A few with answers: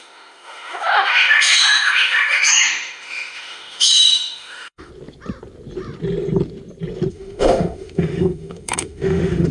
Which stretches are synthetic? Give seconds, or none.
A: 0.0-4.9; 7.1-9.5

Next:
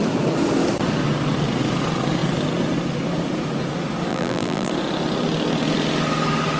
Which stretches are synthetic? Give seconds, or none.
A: 4.1-4.7

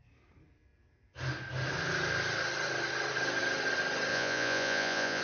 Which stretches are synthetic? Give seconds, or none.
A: 4.1-5.2

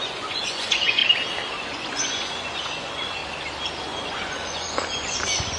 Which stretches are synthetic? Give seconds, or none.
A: 0.0-1.0; 1.6-3.2; 3.8-5.6

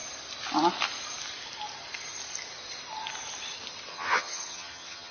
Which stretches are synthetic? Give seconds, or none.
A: 3.9-5.1